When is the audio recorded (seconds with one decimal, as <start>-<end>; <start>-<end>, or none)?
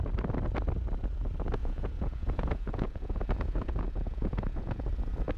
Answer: 0.0-1.6; 4.8-5.4